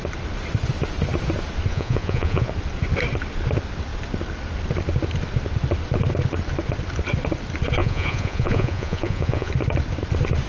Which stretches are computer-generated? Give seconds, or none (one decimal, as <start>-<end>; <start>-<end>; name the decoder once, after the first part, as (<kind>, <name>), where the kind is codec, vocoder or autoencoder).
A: 1.7-2.5 (vocoder, Vocos); 7.8-9.5